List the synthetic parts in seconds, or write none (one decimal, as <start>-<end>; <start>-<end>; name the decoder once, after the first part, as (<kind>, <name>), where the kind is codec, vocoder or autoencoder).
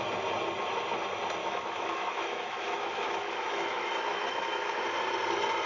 1.4-4.8 (autoencoder, DAC-VAE)